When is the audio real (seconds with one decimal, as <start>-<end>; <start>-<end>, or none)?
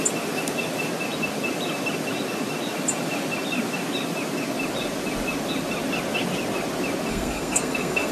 0.0-7.1